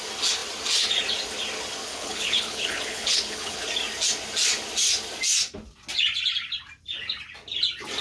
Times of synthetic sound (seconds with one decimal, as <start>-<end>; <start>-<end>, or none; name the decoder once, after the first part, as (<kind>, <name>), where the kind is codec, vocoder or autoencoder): 1.9-3.6 (codec, HILCodec)